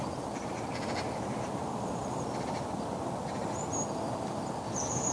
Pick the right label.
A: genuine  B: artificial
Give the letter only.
A